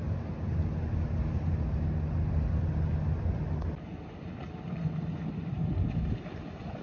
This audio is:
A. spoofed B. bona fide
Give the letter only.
B